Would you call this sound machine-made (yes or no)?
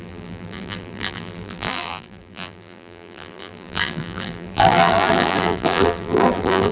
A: yes